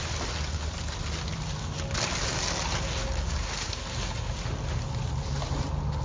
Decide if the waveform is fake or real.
real